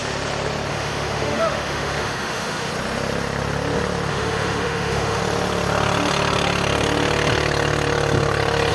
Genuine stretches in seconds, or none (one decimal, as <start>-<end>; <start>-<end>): 0.0-0.7; 2.7-4.1; 5.2-8.7